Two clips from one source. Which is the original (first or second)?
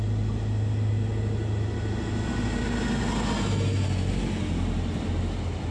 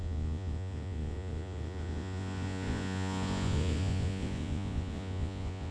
first